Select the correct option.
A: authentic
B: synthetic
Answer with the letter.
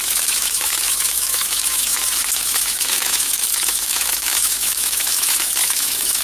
B